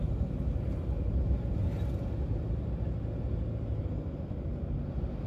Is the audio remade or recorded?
recorded